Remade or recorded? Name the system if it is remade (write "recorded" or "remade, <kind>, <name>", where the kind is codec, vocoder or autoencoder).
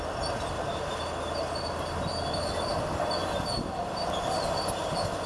recorded